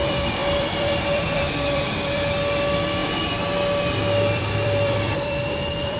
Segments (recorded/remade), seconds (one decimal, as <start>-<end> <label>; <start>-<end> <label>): 0.0-6.0 remade